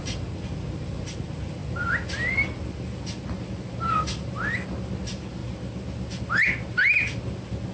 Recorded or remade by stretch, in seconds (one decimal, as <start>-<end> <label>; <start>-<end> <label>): 0.0-7.7 recorded